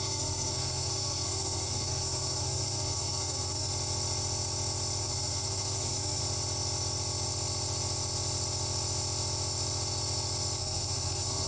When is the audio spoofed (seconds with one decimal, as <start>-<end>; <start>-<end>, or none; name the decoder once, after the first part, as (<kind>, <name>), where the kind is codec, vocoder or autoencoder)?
0.0-3.7 (codec, SNAC); 5.0-6.2; 10.6-11.5